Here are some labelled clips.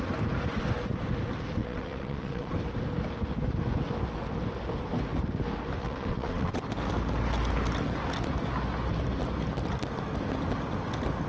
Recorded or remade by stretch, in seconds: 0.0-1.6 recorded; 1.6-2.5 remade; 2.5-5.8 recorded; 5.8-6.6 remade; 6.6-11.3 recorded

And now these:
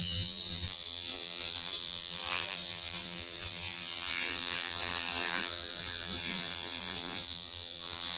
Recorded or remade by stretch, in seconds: 0.0-8.2 remade

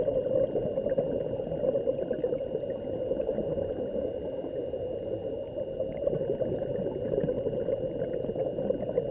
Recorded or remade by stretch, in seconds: 0.0-9.1 recorded

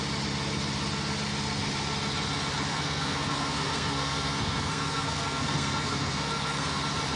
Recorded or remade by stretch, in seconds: 0.0-2.7 recorded; 2.7-6.8 remade; 6.8-7.2 recorded

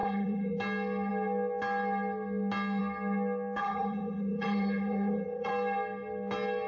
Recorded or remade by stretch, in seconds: 0.0-0.6 remade; 0.6-3.6 recorded; 3.6-5.5 remade; 5.5-6.7 recorded

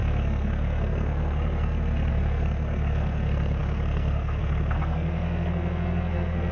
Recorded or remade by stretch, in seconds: 0.0-6.5 remade

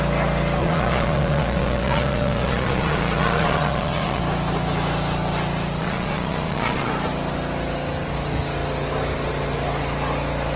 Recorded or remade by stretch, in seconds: 0.0-0.6 recorded; 0.6-4.2 remade; 4.2-5.8 recorded; 5.8-6.9 remade; 6.9-10.6 recorded

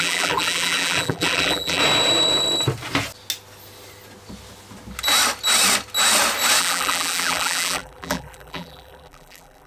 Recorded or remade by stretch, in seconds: 0.0-1.8 remade; 1.8-6.6 recorded; 6.6-9.7 remade